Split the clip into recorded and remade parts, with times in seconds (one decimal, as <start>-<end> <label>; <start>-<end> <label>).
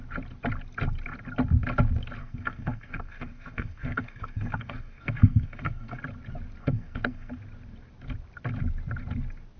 0.0-2.2 recorded; 2.2-6.0 remade; 6.0-6.6 recorded; 6.6-7.3 remade; 7.3-9.6 recorded